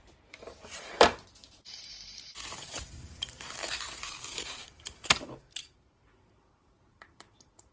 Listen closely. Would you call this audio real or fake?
fake